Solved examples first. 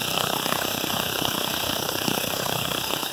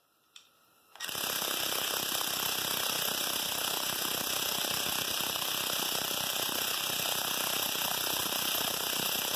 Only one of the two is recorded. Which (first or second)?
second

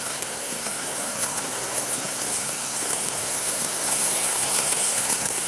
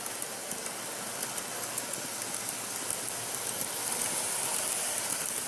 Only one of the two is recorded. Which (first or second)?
second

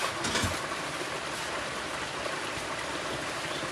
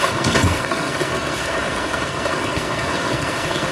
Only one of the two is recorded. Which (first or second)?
first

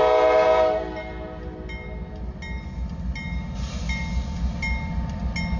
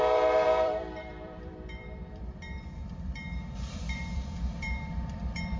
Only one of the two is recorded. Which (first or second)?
first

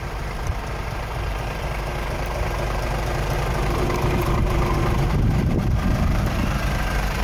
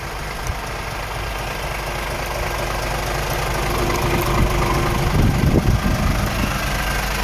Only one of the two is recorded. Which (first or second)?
second